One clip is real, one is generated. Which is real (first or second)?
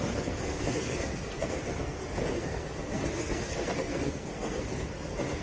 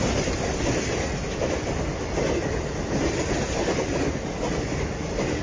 second